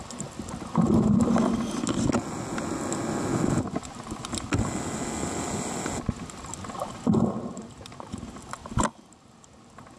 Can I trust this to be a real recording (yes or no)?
yes